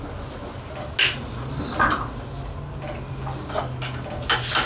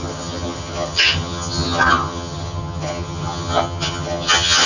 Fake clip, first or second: second